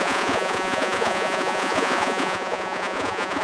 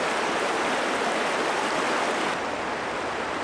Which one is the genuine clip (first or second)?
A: second